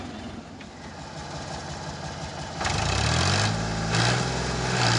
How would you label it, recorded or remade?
recorded